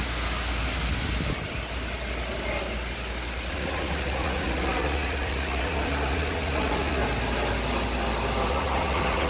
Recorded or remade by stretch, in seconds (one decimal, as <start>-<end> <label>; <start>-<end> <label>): 0.0-3.5 recorded; 3.5-7.0 remade; 7.0-8.5 recorded; 8.5-9.3 remade